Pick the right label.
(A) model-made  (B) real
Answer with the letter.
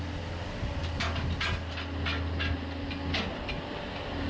B